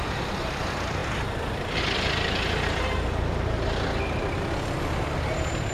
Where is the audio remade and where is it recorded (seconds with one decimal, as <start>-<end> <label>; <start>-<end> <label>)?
0.0-5.7 recorded